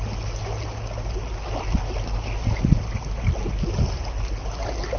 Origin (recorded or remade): recorded